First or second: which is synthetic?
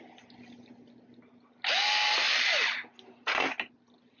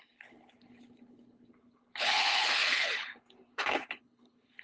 second